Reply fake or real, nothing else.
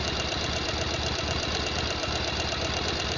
fake